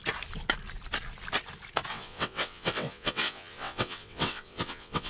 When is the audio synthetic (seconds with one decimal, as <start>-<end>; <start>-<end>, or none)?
1.9-5.1

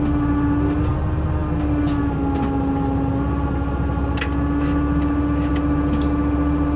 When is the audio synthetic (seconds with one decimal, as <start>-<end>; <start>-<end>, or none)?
none

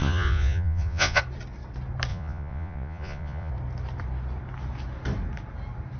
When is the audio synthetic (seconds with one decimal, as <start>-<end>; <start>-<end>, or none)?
0.0-1.2; 2.1-3.5

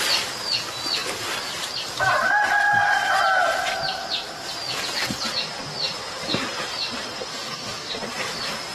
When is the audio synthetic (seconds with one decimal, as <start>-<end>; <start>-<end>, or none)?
7.3-7.9